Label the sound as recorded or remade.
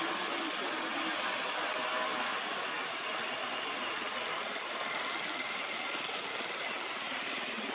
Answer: recorded